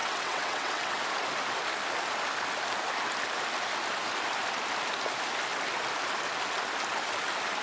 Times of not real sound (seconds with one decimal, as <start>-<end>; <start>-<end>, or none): 0.0-1.0